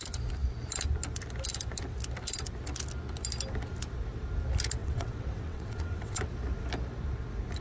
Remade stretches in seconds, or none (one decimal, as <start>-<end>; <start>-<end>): 4.8-6.2